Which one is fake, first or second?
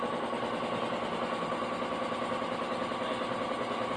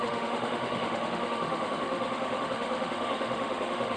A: second